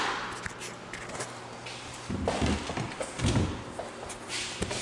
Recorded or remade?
recorded